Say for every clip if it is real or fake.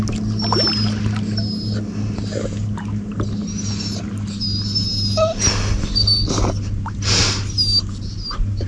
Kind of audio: real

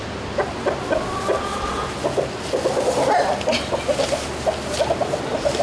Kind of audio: real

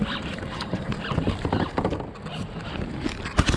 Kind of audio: real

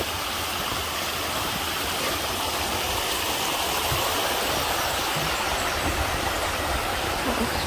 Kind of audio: real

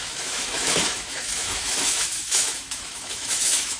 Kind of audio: fake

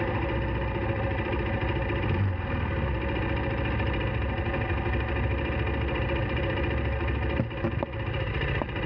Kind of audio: real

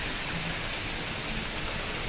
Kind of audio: real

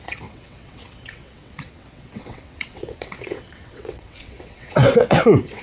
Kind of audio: fake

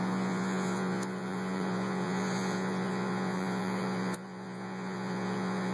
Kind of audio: fake